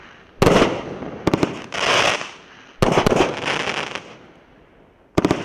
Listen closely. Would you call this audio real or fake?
real